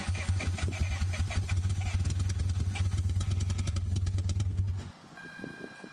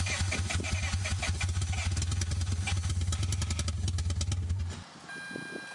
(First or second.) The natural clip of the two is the second